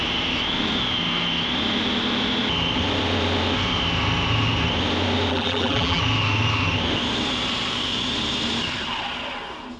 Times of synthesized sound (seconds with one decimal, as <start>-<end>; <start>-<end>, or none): 5.3-6.0